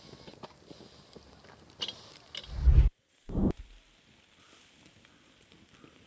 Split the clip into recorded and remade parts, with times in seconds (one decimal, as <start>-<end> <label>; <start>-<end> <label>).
0.0-6.1 recorded